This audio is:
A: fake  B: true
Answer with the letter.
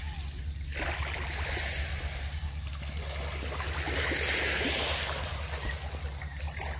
B